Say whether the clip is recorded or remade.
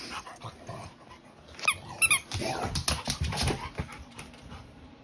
recorded